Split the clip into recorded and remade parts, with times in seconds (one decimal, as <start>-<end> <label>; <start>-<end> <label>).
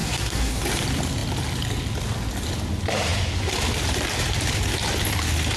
0.0-0.6 remade; 0.6-5.6 recorded